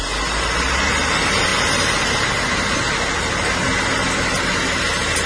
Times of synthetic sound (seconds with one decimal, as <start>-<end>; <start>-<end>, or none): none